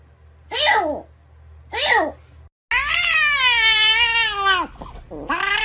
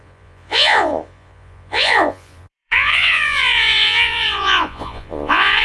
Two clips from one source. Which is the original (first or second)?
first